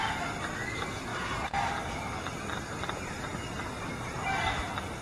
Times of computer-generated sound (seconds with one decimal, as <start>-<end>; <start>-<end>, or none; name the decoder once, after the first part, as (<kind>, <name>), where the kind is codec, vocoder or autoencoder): 1.1-4.1 (vocoder, BigVGAN v2)